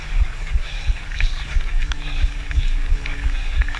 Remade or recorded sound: remade